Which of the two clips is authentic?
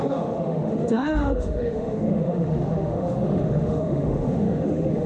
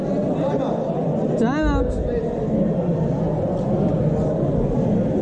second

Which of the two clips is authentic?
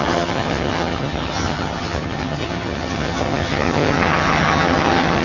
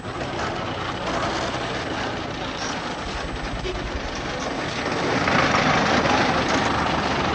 second